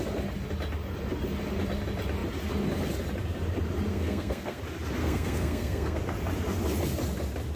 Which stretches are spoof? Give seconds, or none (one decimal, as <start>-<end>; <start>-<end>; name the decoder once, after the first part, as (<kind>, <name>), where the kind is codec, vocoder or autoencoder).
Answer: 3.9-4.6 (codec, SNAC); 5.0-6.0